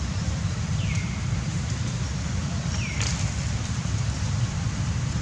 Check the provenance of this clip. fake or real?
fake